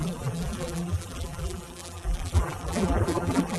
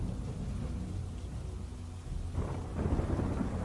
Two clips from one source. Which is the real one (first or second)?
second